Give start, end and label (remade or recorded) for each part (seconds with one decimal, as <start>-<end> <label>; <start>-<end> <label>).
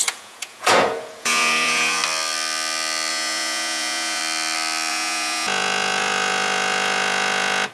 0.0-2.0 remade; 2.0-3.1 recorded; 3.1-4.2 remade; 4.2-4.9 recorded; 4.9-7.7 remade